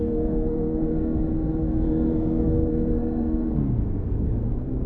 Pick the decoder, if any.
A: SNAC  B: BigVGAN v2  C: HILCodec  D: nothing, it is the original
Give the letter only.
A